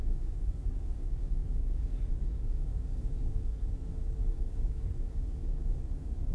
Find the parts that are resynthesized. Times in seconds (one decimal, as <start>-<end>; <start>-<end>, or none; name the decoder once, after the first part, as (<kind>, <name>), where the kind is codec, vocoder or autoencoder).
0.0-6.3 (codec, DAC)

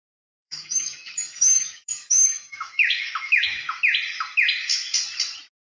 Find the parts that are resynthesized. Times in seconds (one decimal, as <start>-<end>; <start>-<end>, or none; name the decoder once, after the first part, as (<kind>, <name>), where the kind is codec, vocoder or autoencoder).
0.4-3.8 (autoencoder, DAC-VAE)

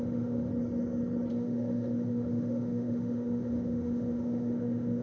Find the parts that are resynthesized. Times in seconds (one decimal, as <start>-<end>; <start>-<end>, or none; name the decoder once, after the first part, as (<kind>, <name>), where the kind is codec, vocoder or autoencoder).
0.0-0.5 (autoencoder, DAC-VAE); 1.3-5.0

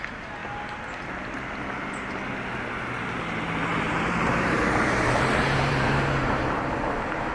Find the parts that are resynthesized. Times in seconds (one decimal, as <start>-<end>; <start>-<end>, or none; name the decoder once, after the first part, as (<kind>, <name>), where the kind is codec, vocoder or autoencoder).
3.7-7.3 (vocoder, BigVGAN v2)

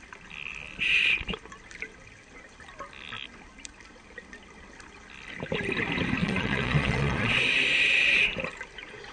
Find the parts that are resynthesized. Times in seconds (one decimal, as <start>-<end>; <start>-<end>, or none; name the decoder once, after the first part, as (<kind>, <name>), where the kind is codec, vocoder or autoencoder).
6.2-7.3 (vocoder, Vocos)

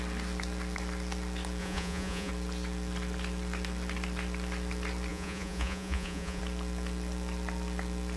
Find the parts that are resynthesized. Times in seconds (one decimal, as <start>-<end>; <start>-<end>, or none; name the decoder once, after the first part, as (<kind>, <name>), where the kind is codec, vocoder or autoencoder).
1.6-2.3 (vocoder, Vocos); 5.1-6.4

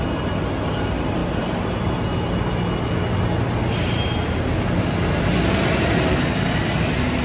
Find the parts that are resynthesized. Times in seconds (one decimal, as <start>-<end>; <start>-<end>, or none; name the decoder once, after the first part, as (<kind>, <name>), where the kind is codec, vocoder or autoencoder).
none